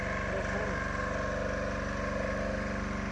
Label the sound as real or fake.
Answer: real